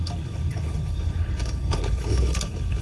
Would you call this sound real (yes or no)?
no